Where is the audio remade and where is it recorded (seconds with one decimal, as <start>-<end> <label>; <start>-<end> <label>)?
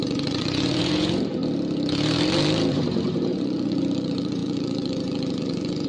0.0-1.4 remade; 1.4-2.7 recorded; 2.7-5.9 remade